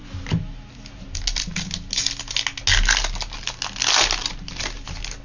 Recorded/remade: recorded